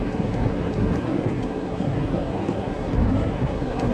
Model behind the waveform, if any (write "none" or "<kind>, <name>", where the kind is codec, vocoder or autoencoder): codec, SNAC